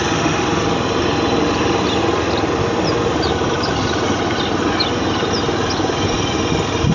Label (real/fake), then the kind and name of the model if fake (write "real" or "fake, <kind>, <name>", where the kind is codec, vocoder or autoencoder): real